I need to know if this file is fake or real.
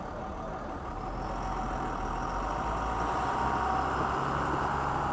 real